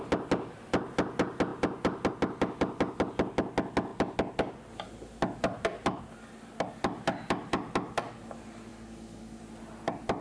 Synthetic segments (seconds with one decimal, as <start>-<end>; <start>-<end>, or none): 8.7-9.4